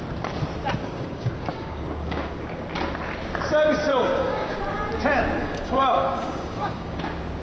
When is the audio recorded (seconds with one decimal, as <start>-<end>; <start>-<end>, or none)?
0.0-0.8; 2.6-3.9; 4.6-5.4; 7.0-7.4